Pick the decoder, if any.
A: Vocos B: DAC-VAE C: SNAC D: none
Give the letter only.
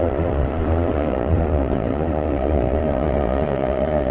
A